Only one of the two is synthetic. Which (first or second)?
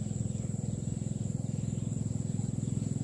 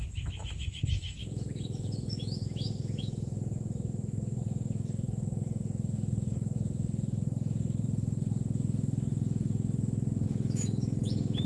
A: second